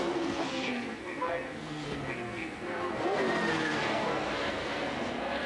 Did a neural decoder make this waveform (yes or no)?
yes